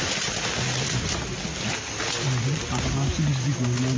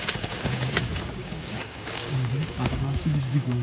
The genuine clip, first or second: first